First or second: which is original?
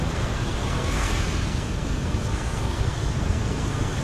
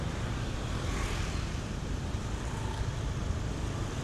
second